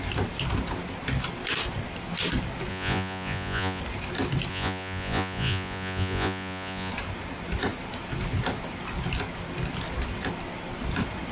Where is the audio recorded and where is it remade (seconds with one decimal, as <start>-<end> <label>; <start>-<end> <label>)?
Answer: 0.0-2.7 recorded; 2.7-3.8 remade; 3.8-4.5 recorded; 4.5-6.9 remade; 6.9-11.3 recorded